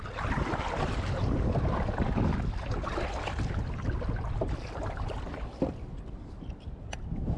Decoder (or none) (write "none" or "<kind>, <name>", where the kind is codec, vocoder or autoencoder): none